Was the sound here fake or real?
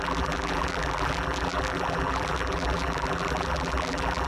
fake